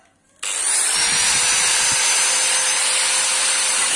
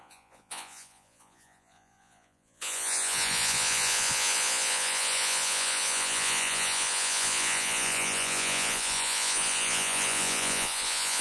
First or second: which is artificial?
second